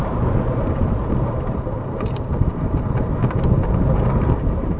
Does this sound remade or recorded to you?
remade